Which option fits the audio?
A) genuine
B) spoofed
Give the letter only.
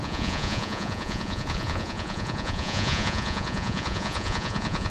B